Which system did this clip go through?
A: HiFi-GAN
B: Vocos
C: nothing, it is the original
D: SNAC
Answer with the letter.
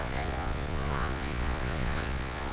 B